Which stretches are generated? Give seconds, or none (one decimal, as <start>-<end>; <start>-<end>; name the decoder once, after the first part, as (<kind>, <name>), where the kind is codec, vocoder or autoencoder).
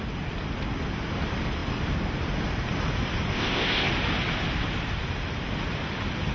3.3-3.9 (codec, ZipCodec)